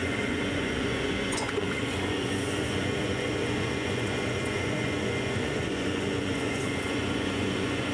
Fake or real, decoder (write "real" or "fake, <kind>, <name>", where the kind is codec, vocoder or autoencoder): fake, vocoder, Vocos